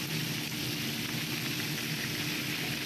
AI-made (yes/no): no